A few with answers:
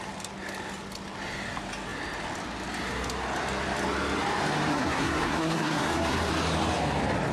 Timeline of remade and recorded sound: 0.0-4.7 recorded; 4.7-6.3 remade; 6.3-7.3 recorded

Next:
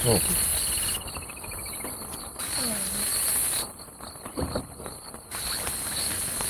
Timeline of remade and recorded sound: 0.0-6.5 recorded

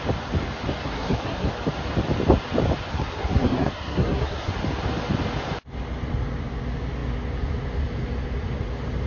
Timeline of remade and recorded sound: 0.0-0.8 recorded; 0.8-1.5 remade; 1.5-2.9 recorded; 2.9-4.5 remade; 4.5-9.1 recorded

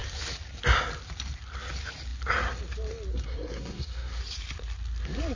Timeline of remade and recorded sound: 0.0-3.1 recorded; 3.1-4.2 remade; 4.2-5.3 recorded